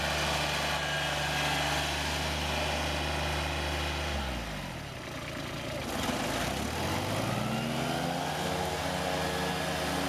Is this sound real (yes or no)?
yes